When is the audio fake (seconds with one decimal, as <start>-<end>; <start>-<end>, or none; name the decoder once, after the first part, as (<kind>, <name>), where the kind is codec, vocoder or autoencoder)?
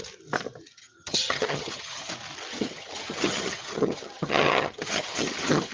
0.8-2.1 (vocoder, HiFi-GAN); 2.5-5.7